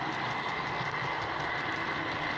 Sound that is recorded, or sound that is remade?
recorded